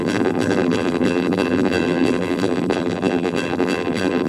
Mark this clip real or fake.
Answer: fake